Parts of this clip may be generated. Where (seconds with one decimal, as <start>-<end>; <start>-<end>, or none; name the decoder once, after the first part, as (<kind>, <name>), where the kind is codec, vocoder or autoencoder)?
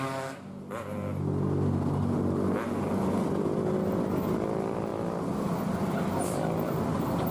none